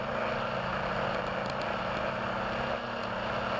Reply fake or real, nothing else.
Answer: real